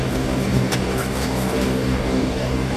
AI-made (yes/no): yes